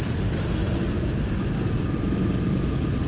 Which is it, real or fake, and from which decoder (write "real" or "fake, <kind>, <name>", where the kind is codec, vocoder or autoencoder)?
real